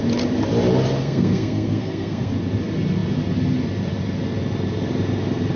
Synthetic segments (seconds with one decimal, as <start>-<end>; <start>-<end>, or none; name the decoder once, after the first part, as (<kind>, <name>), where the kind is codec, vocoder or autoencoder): 1.0-2.3 (codec, SNAC)